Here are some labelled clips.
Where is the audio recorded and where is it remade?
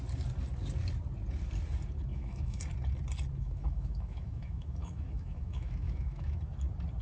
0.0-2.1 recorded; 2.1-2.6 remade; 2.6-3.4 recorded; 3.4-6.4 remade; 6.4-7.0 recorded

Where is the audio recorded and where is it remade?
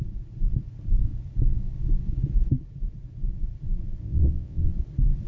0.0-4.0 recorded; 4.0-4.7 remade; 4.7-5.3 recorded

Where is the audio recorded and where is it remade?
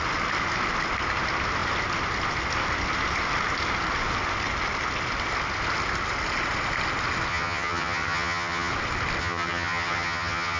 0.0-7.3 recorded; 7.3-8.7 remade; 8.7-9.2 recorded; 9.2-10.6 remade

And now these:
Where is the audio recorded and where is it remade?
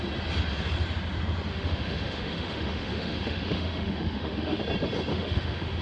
0.0-1.5 recorded; 1.5-4.6 remade; 4.6-5.1 recorded; 5.1-5.8 remade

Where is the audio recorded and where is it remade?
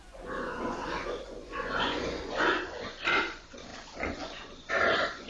0.0-5.3 remade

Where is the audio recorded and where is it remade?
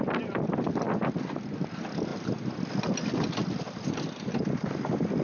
0.0-5.2 recorded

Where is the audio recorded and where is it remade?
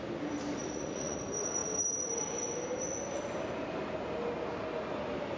0.0-0.6 recorded; 0.6-1.2 remade; 1.2-5.4 recorded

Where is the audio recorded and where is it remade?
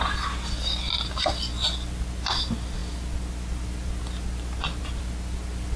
0.0-5.8 recorded